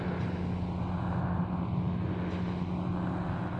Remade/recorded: recorded